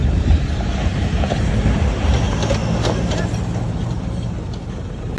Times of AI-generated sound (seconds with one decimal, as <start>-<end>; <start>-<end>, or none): 0.0-2.1

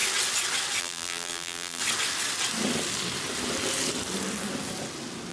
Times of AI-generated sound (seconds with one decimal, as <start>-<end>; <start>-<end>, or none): 0.8-1.8

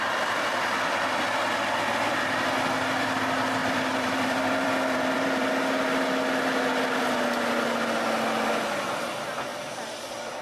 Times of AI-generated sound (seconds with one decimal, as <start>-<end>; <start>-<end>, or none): 3.6-5.5; 9.5-10.4

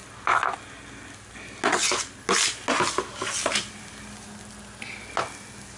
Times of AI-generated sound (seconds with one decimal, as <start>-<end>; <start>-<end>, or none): none